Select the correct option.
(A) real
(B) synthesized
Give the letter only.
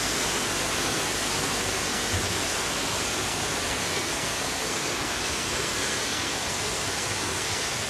B